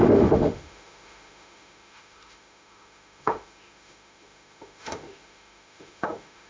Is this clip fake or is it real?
fake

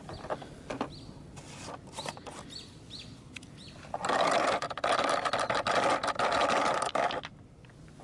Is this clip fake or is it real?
real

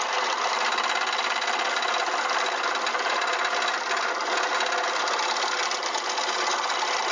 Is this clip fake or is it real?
real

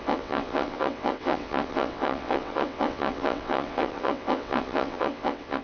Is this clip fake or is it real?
fake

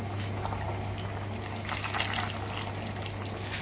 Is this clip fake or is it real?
real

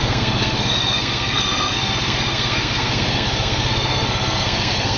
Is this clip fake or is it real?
fake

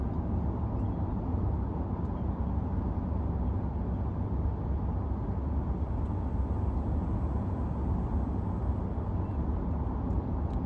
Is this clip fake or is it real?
real